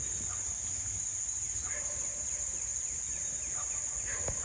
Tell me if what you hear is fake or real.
real